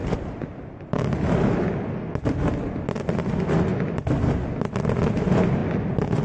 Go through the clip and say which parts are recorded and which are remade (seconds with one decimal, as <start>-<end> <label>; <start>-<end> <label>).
0.0-6.2 recorded